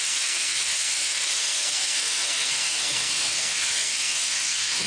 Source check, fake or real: fake